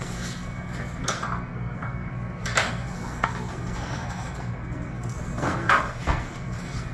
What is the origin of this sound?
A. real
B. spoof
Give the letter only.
B